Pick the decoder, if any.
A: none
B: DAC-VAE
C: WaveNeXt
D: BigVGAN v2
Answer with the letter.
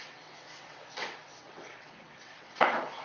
C